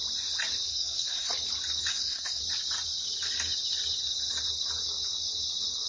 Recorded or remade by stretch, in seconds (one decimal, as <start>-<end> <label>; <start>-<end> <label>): 0.0-0.7 recorded; 0.7-1.3 remade; 1.3-1.9 recorded; 1.9-2.4 remade; 2.4-5.9 recorded